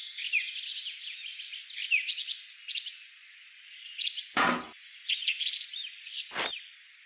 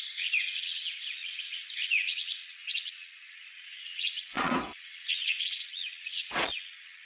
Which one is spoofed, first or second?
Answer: second